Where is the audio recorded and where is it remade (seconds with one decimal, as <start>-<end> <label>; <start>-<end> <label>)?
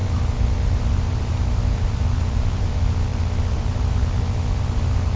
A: 0.0-5.2 remade